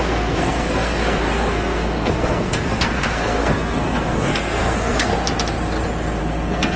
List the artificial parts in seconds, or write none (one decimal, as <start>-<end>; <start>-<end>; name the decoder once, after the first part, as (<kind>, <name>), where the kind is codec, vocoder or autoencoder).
0.0-5.1 (codec, SNAC); 6.2-6.8